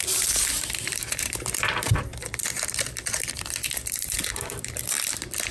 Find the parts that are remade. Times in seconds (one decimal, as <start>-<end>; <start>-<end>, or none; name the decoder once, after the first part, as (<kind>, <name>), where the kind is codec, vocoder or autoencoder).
0.0-5.5 (vocoder, BigVGAN v2)